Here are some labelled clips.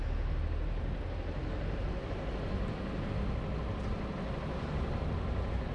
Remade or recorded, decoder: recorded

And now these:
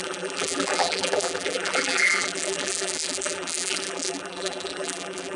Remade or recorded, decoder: remade, vocoder, BigVGAN v2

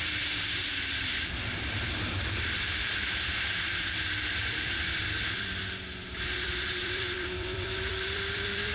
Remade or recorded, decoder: remade, vocoder, BigVGAN v2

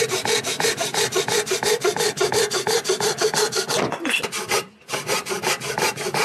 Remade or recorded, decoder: remade, vocoder, BigVGAN v2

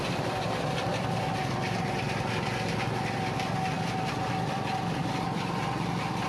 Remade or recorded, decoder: recorded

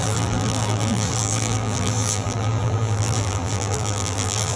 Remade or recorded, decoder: remade, vocoder, BigVGAN v2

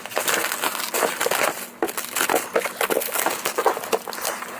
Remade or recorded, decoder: recorded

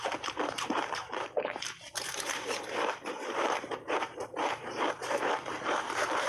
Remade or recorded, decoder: remade, vocoder, BigVGAN v2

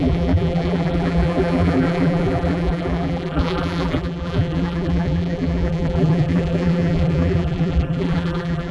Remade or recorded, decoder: remade, vocoder, BigVGAN v2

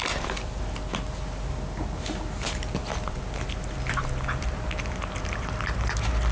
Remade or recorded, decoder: recorded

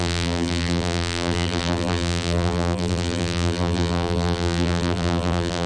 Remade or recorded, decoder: remade, vocoder, BigVGAN v2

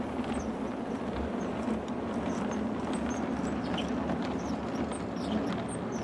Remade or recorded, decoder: recorded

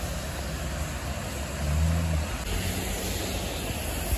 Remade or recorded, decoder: recorded